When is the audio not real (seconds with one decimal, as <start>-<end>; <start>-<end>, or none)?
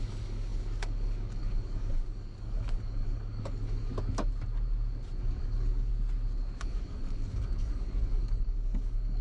0.0-3.9; 5.2-5.9; 6.6-9.2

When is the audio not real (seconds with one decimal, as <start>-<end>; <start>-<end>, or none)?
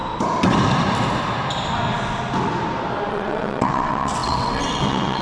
3.1-5.2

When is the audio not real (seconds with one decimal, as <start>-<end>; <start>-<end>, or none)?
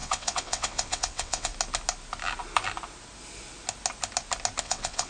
0.0-1.5; 4.6-5.1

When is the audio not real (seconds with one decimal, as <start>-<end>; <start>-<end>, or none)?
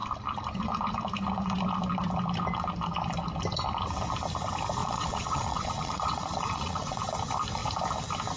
4.8-7.0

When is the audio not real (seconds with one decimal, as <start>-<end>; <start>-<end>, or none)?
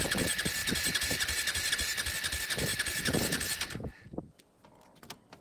0.6-1.7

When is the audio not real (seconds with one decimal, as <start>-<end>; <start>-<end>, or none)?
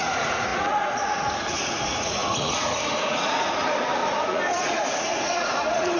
0.0-6.0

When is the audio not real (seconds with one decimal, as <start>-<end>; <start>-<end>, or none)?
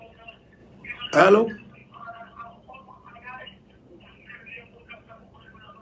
none